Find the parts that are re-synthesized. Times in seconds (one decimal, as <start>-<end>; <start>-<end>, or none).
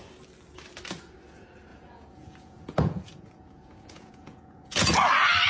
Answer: 1.7-4.9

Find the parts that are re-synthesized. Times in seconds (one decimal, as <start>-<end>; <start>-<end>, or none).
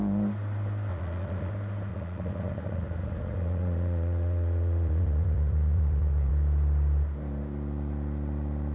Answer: 0.9-1.5; 1.9-6.3